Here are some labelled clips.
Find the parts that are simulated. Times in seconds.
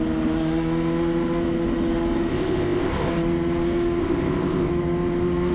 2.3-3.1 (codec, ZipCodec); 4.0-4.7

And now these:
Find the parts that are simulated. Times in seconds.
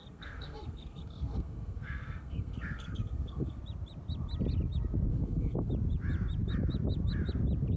0.0-3.6 (codec, SNAC); 5.1-5.7